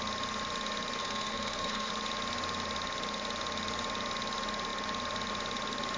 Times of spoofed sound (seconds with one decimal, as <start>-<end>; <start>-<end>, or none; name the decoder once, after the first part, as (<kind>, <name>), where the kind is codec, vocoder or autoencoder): 1.0-1.9 (codec, SNAC)